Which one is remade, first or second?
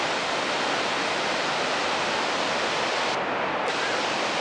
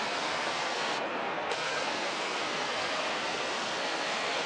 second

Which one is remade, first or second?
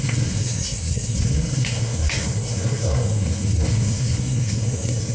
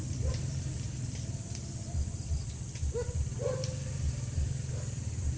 first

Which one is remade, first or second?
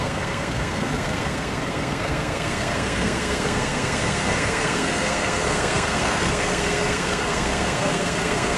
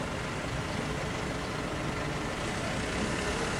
first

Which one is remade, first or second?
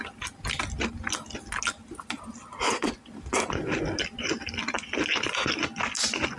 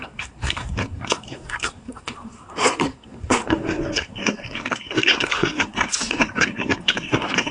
second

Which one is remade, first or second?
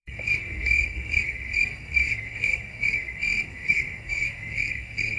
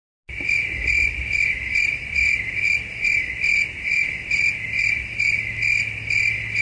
first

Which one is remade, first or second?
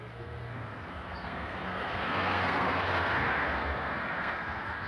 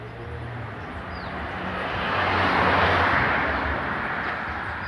first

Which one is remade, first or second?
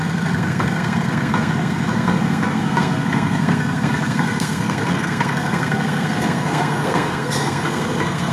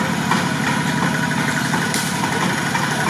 first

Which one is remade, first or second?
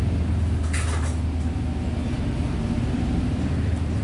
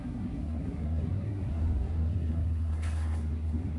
second